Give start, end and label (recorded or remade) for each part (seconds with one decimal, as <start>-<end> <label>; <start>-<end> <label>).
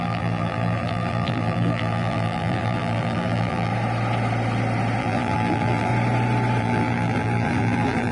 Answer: 0.0-3.7 remade; 3.7-5.0 recorded; 5.0-5.9 remade; 5.9-6.6 recorded; 6.6-8.1 remade